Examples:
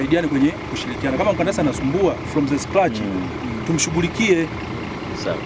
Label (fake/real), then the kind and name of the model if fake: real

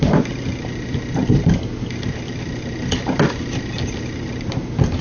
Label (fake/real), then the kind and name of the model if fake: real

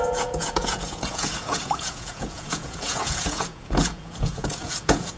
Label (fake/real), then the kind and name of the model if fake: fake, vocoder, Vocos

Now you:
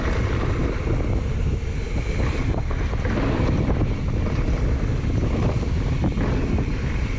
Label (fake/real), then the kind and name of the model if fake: real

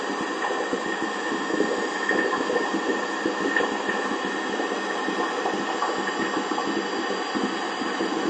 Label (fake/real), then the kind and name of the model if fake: real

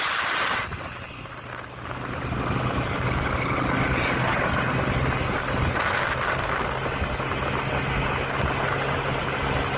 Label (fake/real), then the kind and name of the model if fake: real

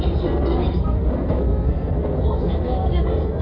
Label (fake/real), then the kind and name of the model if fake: fake, codec, SNAC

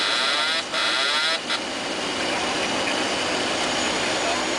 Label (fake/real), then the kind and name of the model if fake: real